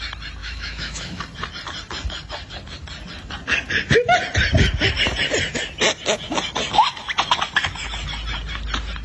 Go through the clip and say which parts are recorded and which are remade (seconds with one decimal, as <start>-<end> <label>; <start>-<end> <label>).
0.0-0.4 recorded; 0.4-1.2 remade; 1.2-9.0 recorded